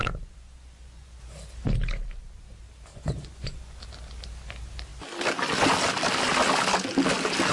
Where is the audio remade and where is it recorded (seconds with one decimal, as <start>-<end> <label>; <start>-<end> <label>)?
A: 0.0-1.2 remade; 1.2-2.9 recorded; 2.9-3.8 remade; 3.8-7.5 recorded